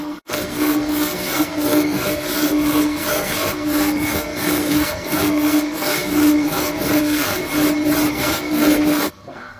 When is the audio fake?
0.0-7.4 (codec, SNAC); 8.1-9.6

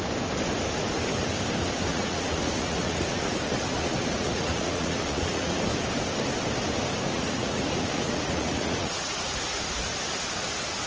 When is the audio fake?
1.9-5.6 (vocoder, Vocos); 7.1-9.6

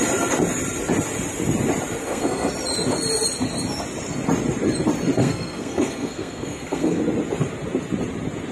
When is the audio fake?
2.0-2.5 (codec, SNAC); 5.2-7.0

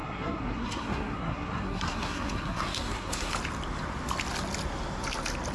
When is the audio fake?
0.0-3.3 (codec, SNAC)

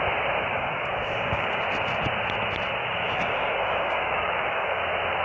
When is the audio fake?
0.5-1.6 (codec, DAC); 2.8-4.8